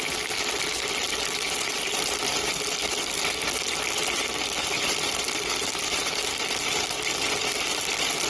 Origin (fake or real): real